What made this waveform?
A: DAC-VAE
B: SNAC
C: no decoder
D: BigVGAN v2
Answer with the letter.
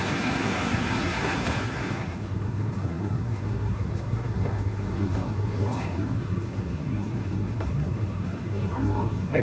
B